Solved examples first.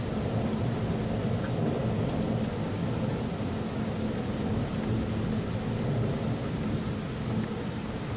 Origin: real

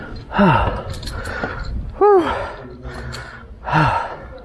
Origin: real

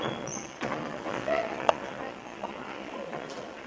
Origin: fake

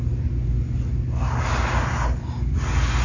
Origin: real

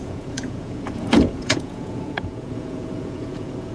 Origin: fake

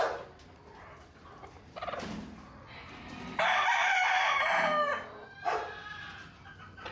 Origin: real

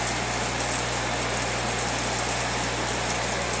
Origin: real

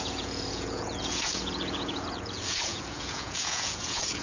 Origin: fake